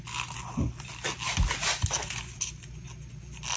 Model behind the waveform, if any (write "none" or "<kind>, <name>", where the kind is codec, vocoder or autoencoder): none